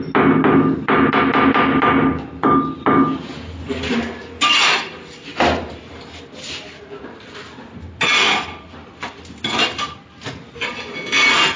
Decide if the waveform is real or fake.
real